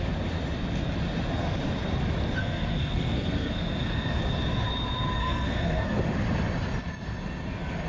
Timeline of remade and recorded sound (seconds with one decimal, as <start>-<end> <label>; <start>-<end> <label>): 0.0-2.4 recorded; 2.4-4.2 remade; 4.2-5.2 recorded; 5.2-6.0 remade; 6.0-7.9 recorded